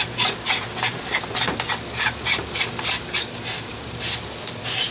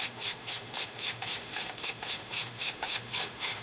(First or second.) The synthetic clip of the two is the second